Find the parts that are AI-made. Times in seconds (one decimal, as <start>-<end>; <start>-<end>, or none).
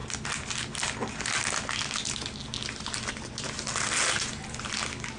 none